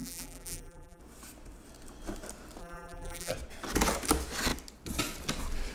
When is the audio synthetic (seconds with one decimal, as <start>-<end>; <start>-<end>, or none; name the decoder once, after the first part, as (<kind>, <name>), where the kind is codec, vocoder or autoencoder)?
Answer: 0.0-1.0 (vocoder, BigVGAN v2); 2.6-3.3